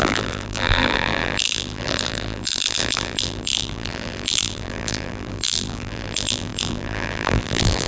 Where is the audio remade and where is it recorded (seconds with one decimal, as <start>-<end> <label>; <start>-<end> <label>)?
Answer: 0.0-7.9 remade

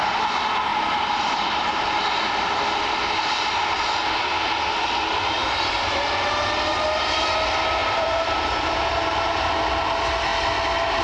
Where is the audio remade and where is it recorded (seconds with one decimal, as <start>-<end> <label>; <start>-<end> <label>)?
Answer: 0.0-0.7 recorded; 0.7-2.0 remade; 2.0-5.4 recorded; 5.4-6.3 remade; 6.3-7.8 recorded; 7.8-9.5 remade; 9.5-11.0 recorded

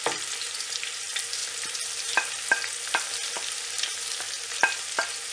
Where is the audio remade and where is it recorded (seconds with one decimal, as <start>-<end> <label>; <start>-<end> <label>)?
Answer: 0.0-5.3 recorded

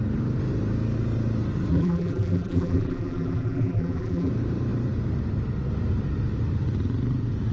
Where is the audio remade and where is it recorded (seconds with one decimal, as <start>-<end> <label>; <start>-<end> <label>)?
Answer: 0.0-1.7 recorded; 1.7-4.3 remade; 4.3-7.5 recorded

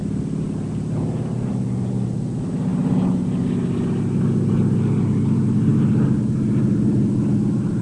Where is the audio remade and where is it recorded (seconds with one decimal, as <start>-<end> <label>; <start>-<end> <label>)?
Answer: 0.0-2.7 remade; 2.7-4.5 recorded; 4.5-7.8 remade

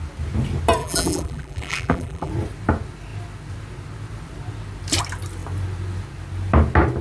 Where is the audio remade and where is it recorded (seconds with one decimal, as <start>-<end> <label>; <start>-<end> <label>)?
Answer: 0.0-0.8 recorded; 0.8-2.3 remade; 2.3-7.0 recorded

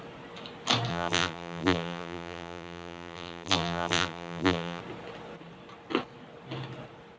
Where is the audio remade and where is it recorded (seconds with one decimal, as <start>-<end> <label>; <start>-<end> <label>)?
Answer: 0.0-0.9 recorded; 0.9-4.8 remade; 4.8-7.2 recorded